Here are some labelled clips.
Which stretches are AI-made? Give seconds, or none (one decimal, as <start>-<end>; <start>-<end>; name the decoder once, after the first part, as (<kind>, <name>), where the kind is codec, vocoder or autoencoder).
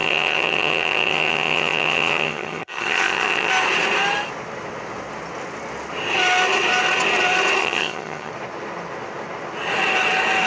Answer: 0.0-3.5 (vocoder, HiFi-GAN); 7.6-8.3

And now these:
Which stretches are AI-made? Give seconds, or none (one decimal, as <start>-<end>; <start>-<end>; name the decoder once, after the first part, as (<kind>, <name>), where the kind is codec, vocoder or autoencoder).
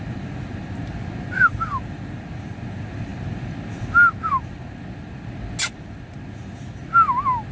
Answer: none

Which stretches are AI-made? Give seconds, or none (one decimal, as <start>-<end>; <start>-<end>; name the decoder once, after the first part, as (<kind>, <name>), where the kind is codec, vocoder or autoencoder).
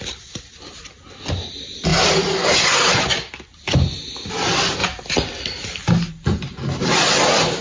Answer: none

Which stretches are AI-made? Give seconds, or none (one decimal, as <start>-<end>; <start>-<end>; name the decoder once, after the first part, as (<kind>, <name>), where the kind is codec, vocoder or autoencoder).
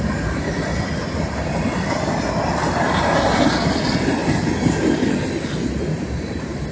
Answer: none